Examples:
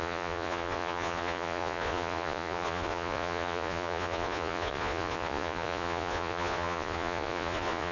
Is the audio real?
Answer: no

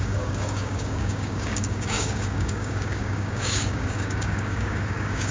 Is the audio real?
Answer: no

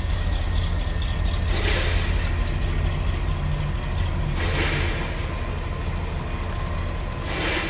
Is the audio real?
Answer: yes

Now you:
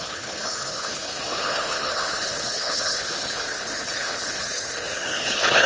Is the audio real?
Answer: no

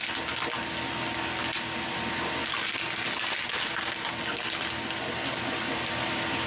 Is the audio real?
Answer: yes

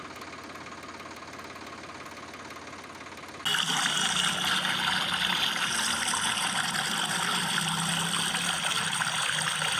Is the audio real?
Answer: yes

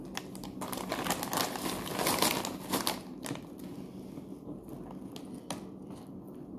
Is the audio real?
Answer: yes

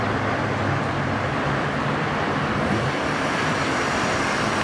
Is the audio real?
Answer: no